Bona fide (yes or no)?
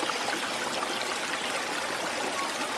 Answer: yes